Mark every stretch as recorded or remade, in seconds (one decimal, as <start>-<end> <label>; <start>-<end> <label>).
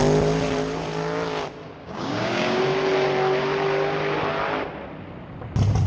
0.0-1.8 recorded; 1.8-2.6 remade; 2.6-5.9 recorded